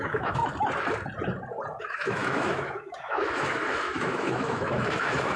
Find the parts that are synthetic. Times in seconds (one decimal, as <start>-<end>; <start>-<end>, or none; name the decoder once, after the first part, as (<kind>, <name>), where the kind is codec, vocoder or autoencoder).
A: 0.0-0.4 (autoencoder, DAC-VAE); 1.8-5.4